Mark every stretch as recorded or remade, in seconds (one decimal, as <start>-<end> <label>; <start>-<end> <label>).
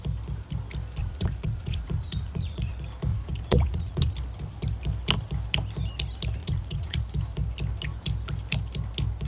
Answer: 0.0-1.0 recorded; 1.0-2.7 remade; 2.7-3.1 recorded; 3.1-4.1 remade; 4.1-6.4 recorded; 6.4-7.0 remade; 7.0-9.3 recorded